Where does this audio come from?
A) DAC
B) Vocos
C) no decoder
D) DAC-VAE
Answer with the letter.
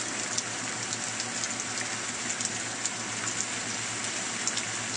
C